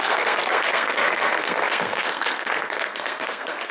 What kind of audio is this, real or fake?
fake